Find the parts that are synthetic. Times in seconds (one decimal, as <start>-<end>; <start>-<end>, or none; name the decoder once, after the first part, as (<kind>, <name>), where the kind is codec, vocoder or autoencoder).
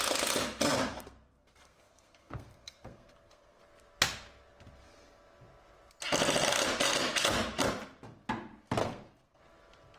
0.9-3.6 (codec, SNAC); 8.8-9.4